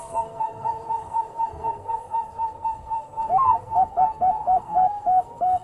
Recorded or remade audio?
remade